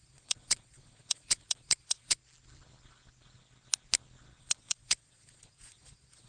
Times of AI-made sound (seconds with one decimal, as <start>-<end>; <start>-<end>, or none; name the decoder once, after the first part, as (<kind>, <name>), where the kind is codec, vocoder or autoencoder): 0.0-2.2 (vocoder, Vocos); 4.4-6.3